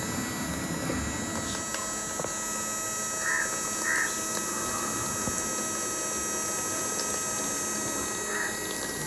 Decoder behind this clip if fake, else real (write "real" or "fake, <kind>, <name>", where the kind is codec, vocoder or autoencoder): real